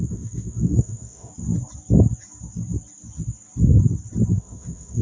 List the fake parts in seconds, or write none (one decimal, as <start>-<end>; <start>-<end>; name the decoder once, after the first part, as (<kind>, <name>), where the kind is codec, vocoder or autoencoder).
0.0-1.3 (autoencoder, DAC-VAE); 4.3-5.0